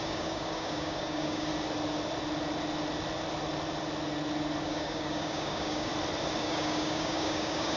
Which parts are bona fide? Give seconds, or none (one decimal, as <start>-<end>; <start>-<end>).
1.5-4.6; 5.9-6.4